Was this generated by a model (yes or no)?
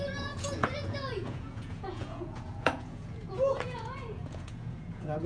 yes